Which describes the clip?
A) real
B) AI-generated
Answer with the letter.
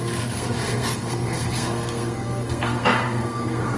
B